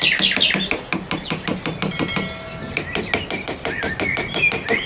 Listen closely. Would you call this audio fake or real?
real